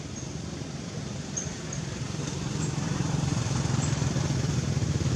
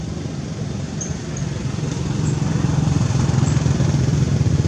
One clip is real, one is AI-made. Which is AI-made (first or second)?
first